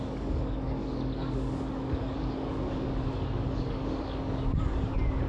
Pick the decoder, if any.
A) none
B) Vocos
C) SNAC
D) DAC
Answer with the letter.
D